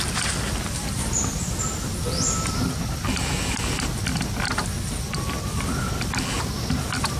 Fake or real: real